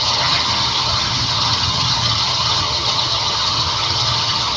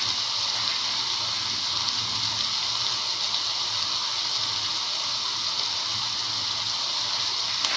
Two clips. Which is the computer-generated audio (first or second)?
first